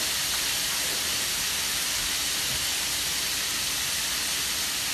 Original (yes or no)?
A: yes